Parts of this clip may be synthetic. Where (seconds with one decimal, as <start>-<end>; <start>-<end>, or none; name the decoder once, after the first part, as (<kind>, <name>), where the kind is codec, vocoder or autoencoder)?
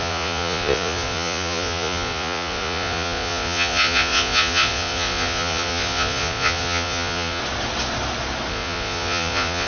0.0-7.4 (vocoder, Vocos); 8.5-9.7